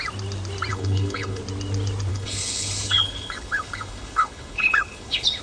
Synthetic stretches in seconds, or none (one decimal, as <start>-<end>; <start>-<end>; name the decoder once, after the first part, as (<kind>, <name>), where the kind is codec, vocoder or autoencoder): 0.7-1.4 (codec, HILCodec); 2.1-5.4